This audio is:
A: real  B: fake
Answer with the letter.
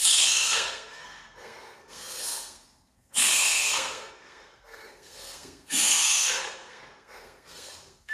B